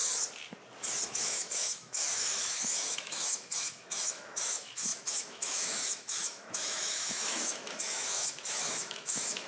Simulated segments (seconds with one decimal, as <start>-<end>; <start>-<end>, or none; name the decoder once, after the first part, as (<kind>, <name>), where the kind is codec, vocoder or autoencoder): 1.1-9.5 (autoencoder, DAC-VAE)